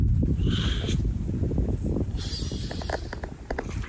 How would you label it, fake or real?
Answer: real